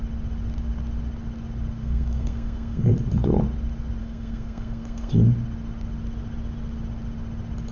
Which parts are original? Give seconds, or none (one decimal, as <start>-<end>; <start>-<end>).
0.0-1.8; 2.9-4.0; 5.1-7.7